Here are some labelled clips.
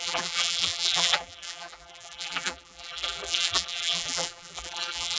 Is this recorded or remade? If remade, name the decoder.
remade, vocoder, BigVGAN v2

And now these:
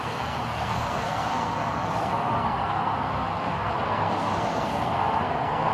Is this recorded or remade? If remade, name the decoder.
remade, codec, SNAC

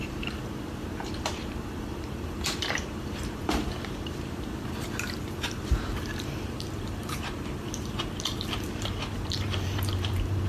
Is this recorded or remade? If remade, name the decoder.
remade, vocoder, BigVGAN v2